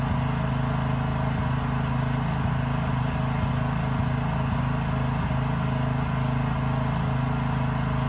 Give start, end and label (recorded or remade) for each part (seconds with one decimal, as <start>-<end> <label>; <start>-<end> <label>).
0.0-8.1 recorded